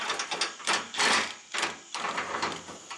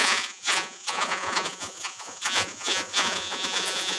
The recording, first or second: first